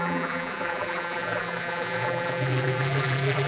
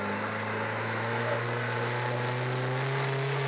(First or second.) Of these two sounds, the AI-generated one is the first